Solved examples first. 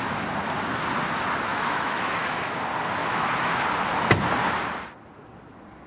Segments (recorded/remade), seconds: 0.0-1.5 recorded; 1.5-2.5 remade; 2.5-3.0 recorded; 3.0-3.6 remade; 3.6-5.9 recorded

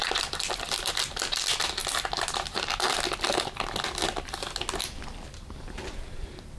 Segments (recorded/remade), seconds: 0.0-6.6 recorded

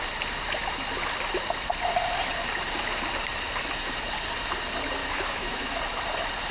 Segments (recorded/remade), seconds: 0.0-5.0 recorded; 5.0-5.8 remade; 5.8-6.5 recorded

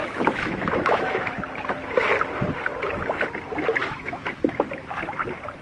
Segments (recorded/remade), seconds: 0.0-1.4 remade; 1.4-3.8 recorded; 3.8-4.9 remade; 4.9-5.6 recorded

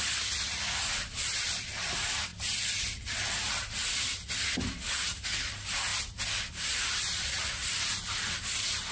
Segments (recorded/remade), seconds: 0.0-8.9 recorded

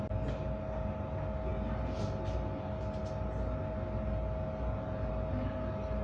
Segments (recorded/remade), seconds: 0.0-6.0 recorded